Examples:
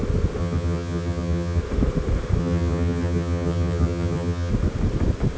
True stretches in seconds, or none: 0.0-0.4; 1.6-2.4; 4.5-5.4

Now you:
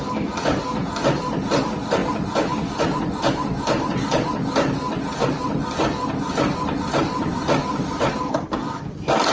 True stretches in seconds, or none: 0.0-9.3

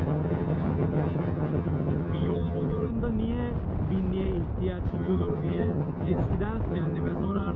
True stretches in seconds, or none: 2.9-4.9; 6.2-6.7

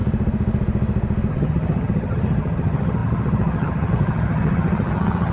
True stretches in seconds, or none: 0.0-1.3

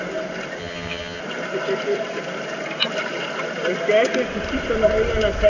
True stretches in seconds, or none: 0.0-0.6; 1.2-5.5

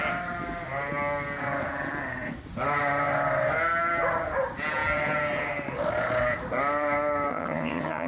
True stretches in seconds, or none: 0.0-7.3

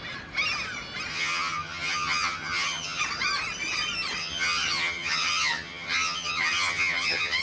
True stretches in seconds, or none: 0.0-1.1; 3.0-4.2